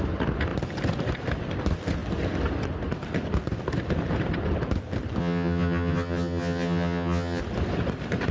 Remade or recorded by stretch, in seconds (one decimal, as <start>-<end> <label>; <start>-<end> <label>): 0.0-5.2 recorded; 5.2-7.4 remade; 7.4-8.3 recorded